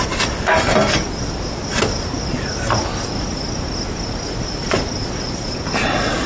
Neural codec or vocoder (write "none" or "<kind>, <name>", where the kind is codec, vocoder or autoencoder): none